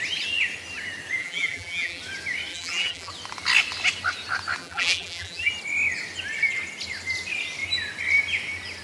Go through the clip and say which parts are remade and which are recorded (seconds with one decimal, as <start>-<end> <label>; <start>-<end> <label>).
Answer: 0.0-1.2 recorded; 1.2-2.0 remade; 2.0-2.5 recorded; 2.5-3.1 remade; 3.1-4.6 recorded; 4.6-5.5 remade; 5.5-8.8 recorded